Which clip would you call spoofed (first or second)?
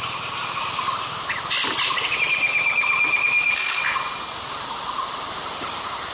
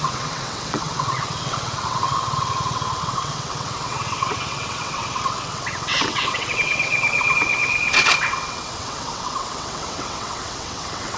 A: second